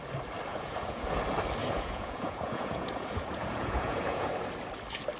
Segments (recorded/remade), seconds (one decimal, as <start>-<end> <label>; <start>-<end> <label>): 0.0-0.5 recorded; 0.5-1.0 remade; 1.0-1.6 recorded; 1.6-4.3 remade; 4.3-5.2 recorded